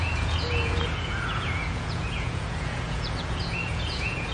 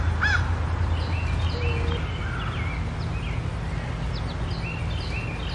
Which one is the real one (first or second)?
second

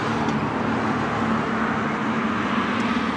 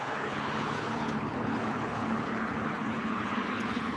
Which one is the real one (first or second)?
first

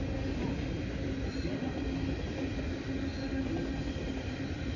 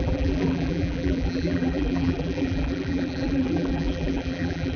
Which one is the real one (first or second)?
first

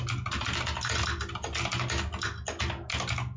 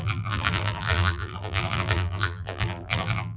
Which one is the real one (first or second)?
first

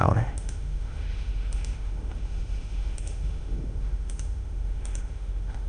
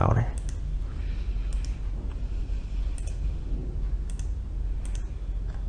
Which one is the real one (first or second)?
second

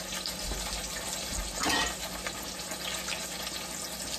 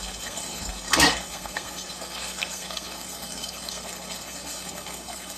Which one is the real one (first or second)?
first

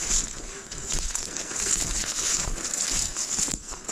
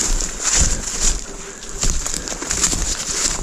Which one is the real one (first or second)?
second